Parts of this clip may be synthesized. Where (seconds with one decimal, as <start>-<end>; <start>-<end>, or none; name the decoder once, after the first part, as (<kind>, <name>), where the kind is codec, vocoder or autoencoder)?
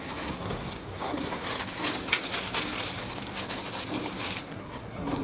0.0-1.5 (codec, SNAC); 4.4-5.2